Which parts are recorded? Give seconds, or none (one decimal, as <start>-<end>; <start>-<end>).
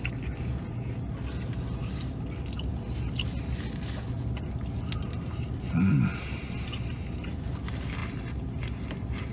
0.0-9.3